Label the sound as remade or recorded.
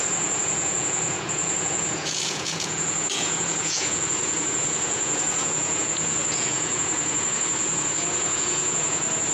remade